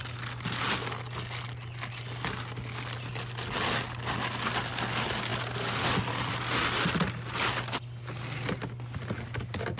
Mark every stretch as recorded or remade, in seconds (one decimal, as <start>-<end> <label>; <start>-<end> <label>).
0.0-9.8 recorded